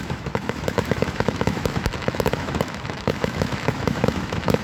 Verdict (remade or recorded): remade